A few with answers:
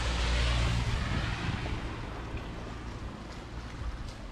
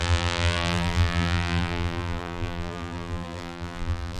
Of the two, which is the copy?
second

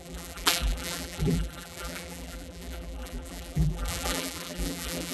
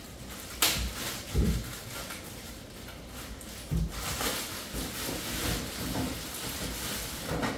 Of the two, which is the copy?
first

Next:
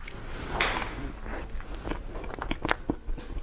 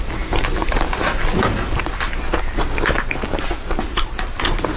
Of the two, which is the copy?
second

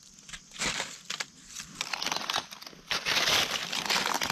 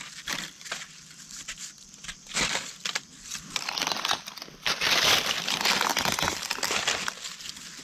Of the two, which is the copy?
second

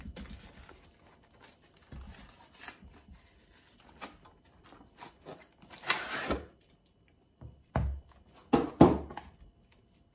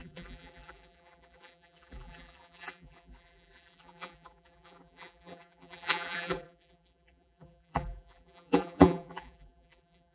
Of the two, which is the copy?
second